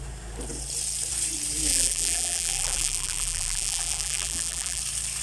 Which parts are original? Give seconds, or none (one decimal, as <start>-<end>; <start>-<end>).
0.0-1.7; 4.8-5.2